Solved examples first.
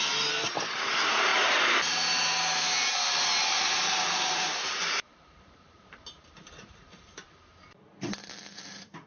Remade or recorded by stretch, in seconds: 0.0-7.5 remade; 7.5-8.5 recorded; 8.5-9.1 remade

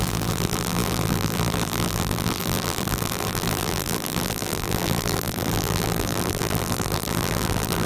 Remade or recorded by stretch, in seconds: 0.0-7.9 remade

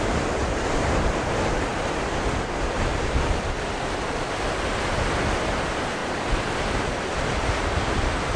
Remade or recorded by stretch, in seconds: 0.0-0.4 recorded; 0.4-1.0 remade; 1.0-2.9 recorded; 2.9-4.4 remade; 4.4-6.0 recorded; 6.0-7.1 remade; 7.1-8.4 recorded